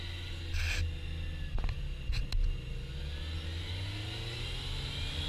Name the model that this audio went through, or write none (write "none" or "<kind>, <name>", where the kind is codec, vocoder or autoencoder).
none